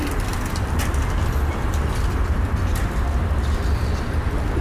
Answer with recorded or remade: recorded